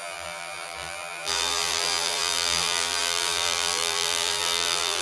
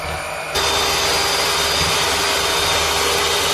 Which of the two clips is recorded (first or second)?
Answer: second